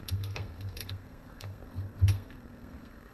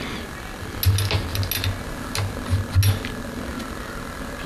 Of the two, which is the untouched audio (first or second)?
second